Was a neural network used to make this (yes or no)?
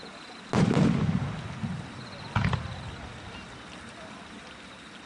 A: no